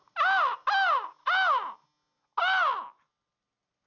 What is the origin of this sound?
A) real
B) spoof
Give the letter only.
A